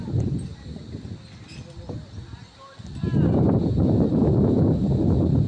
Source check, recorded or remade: recorded